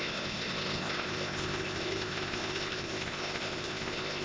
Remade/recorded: remade